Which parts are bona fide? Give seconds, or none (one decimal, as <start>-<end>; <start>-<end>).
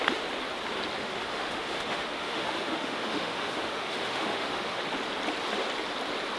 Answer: 0.0-1.0; 4.8-6.4